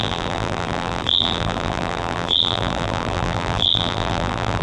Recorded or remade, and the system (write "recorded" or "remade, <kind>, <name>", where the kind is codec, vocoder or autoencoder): remade, vocoder, BigVGAN v2